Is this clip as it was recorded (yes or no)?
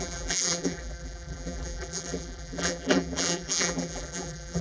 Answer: no